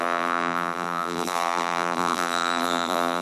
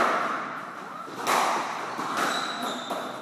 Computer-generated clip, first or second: first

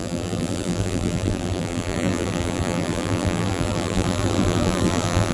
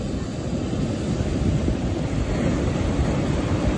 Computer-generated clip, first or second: first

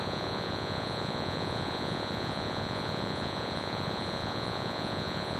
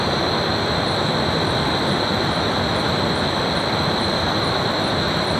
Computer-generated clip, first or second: first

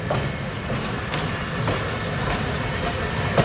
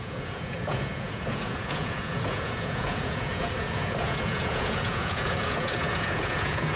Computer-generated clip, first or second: second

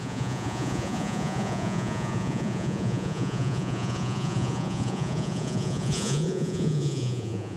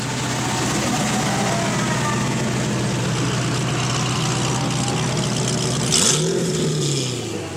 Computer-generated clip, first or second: first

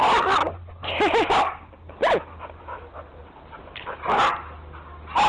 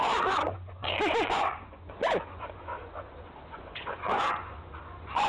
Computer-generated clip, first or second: second